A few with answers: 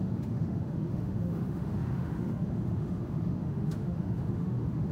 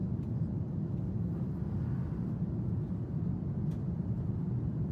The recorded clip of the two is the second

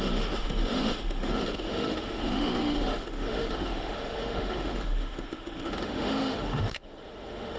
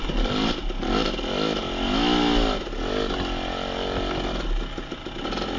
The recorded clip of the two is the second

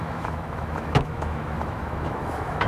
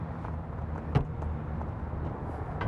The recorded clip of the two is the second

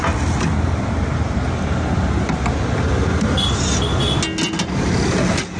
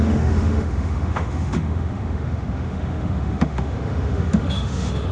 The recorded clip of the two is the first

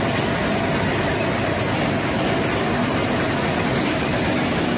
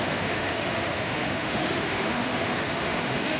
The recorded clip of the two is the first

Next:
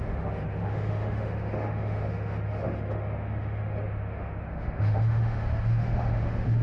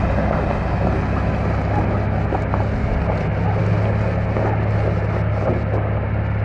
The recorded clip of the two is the second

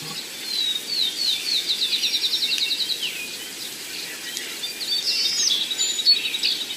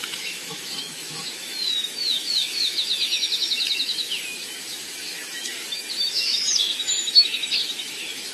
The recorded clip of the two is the first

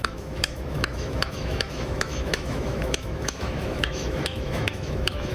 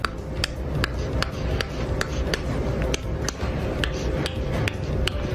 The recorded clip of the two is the second